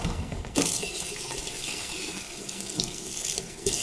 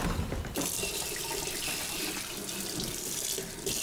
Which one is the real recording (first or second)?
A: second